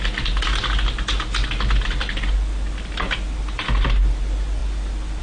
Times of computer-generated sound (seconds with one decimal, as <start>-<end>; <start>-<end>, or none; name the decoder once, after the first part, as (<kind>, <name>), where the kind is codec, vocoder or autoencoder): none